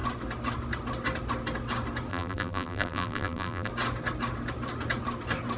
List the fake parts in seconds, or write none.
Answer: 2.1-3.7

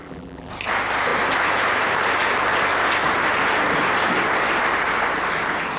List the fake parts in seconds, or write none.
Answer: 0.0-0.5